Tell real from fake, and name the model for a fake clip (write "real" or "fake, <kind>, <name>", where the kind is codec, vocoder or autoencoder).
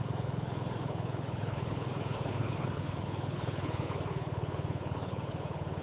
fake, codec, HILCodec